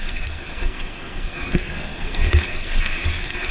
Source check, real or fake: fake